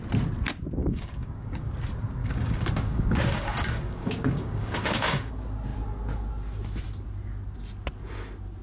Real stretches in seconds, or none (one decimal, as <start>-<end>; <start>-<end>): 0.0-0.8; 1.7-2.2; 5.3-8.6